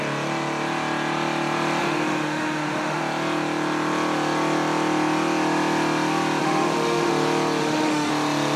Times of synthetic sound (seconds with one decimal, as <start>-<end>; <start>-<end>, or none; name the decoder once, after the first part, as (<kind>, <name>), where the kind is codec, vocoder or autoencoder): 1.8-3.0 (autoencoder, DAC-VAE); 6.4-7.1; 7.6-8.1